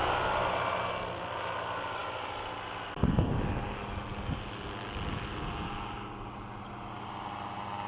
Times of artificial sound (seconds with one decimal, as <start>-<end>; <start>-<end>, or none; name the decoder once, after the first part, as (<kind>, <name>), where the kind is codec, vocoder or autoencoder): none